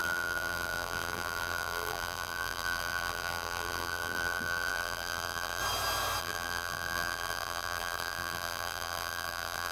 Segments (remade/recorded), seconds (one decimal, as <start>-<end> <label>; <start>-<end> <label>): 0.0-5.6 remade; 5.6-6.2 recorded; 6.2-9.7 remade